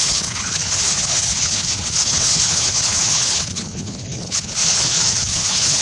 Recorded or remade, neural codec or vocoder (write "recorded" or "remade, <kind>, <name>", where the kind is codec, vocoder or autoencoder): remade, codec, HILCodec